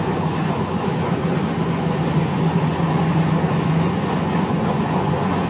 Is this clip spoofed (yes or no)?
yes